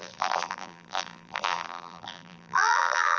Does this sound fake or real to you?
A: fake